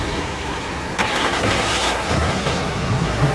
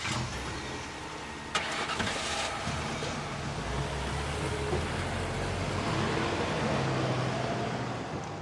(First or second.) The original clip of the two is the second